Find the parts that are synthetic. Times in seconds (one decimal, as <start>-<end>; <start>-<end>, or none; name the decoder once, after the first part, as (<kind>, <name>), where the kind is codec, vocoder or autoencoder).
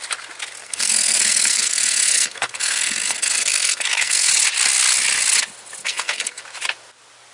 0.6-4.3 (codec, SNAC); 5.8-6.4